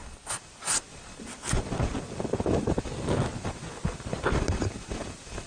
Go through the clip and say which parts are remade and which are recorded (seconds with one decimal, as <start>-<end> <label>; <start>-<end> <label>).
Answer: 0.0-5.5 recorded